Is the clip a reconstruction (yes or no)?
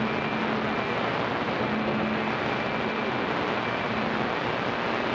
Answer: no